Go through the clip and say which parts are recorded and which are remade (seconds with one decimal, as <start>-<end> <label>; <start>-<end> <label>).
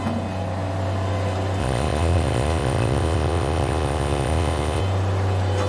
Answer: 0.0-1.6 recorded; 1.6-4.8 remade; 4.8-5.7 recorded